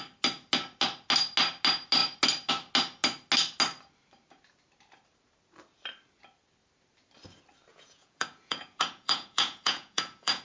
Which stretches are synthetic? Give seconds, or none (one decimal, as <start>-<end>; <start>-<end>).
7.7-10.4